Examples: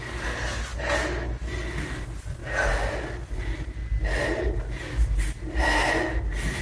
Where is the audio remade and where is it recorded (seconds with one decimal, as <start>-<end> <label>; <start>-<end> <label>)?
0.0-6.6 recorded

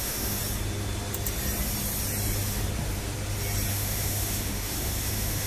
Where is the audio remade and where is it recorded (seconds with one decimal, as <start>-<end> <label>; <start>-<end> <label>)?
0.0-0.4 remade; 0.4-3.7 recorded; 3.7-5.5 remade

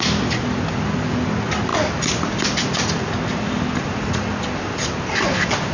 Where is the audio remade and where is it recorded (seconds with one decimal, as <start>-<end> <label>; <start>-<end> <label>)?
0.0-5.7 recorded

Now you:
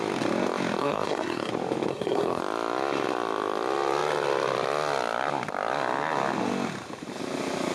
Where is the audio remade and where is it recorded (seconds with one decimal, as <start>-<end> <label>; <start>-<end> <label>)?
0.0-0.8 recorded; 0.8-1.5 remade; 1.5-1.9 recorded; 1.9-2.4 remade; 2.4-7.7 recorded